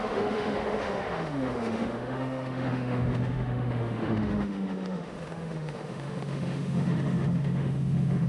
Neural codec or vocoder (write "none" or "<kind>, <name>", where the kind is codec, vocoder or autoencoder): autoencoder, DAC-VAE